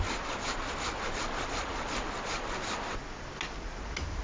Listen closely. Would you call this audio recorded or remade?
recorded